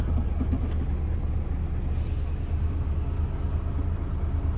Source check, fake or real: real